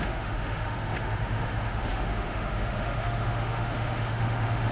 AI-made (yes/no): yes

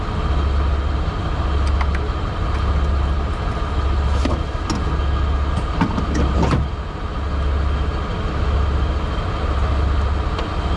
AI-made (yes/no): no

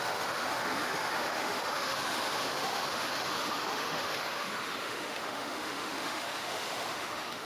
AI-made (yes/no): yes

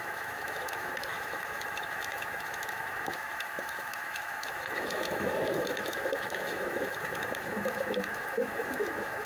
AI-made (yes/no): yes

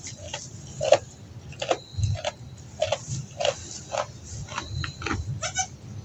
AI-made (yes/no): no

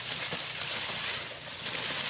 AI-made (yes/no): no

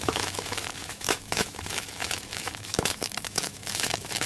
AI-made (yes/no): yes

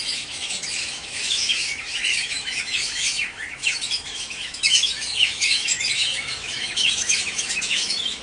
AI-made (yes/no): yes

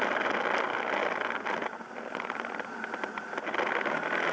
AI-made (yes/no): no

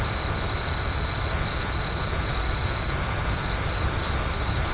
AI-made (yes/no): no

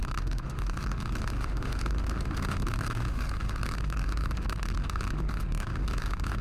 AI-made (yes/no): yes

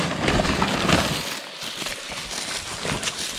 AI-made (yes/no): no